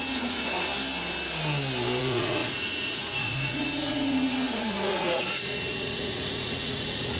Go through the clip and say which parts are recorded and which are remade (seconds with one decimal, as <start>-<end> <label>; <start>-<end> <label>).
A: 0.0-0.7 remade; 0.7-2.0 recorded; 2.0-7.2 remade